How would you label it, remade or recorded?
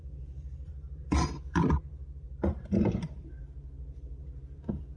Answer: remade